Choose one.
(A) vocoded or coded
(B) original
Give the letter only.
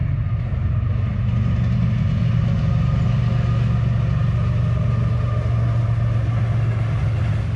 B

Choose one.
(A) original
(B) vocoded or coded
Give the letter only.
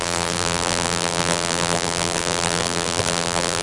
B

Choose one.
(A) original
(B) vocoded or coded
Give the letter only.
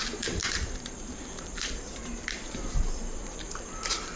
B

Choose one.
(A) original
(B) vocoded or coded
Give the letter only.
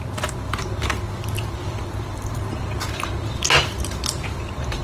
B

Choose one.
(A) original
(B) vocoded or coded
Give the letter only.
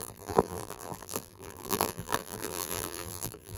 B